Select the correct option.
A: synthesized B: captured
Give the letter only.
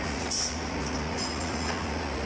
A